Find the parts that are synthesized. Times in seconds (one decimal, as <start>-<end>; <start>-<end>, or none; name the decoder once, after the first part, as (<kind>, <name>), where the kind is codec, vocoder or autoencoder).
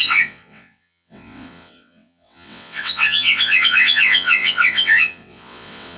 0.0-6.0 (vocoder, WaveNeXt)